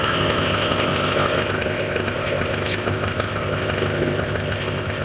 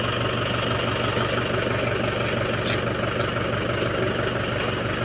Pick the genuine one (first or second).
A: second